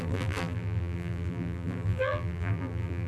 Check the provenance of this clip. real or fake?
fake